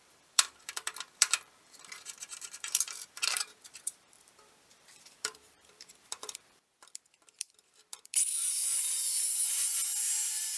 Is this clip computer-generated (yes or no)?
yes